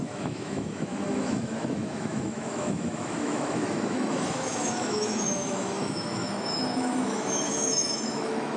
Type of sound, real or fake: fake